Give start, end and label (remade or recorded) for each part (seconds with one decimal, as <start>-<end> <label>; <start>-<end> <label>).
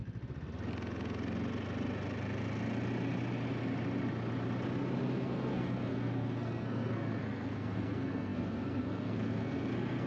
0.0-5.1 recorded; 5.1-10.1 remade